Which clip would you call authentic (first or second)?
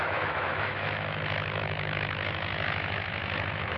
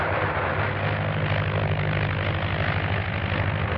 second